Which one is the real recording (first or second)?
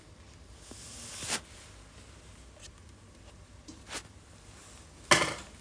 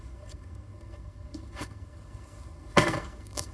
first